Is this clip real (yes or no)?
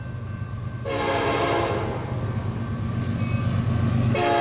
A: yes